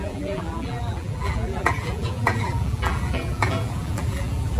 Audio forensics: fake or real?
fake